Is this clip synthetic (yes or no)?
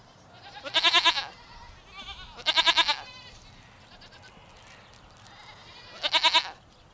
no